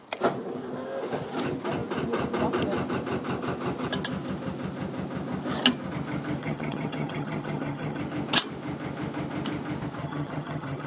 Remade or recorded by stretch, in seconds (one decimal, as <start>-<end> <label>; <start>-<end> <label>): 0.0-6.4 recorded; 6.4-8.0 remade; 8.0-10.0 recorded; 10.0-10.9 remade